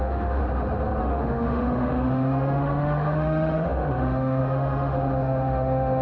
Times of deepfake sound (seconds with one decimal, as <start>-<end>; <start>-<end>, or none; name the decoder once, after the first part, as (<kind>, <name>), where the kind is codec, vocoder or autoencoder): 0.0-0.4 (autoencoder, DAC-VAE); 1.0-6.0